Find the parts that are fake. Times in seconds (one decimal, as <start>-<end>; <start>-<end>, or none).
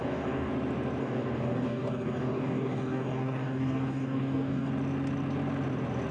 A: 0.0-0.5; 1.0-4.7